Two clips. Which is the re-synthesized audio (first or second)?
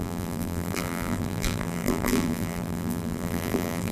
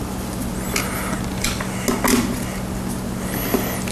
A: first